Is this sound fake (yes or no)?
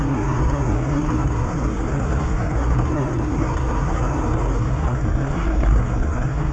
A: yes